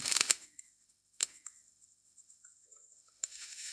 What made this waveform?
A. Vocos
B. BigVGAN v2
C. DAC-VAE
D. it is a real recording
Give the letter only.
C